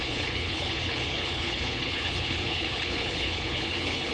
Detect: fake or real fake